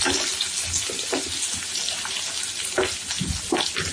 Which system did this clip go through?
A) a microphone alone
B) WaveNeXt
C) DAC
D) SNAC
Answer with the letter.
A